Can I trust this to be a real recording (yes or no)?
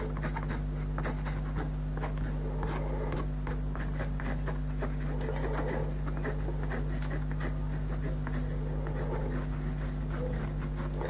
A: yes